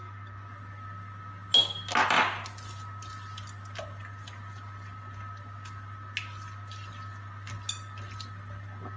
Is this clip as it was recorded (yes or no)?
yes